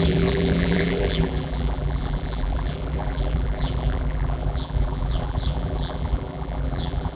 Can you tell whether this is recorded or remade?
remade